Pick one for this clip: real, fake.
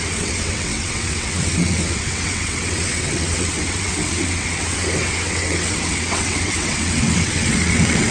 fake